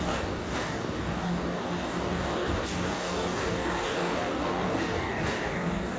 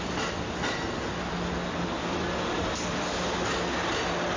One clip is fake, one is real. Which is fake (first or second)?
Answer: first